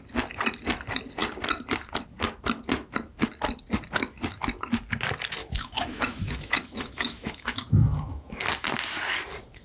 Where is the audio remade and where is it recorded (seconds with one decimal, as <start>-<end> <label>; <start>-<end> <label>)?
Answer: 0.0-5.4 recorded; 5.4-8.4 remade; 8.4-9.6 recorded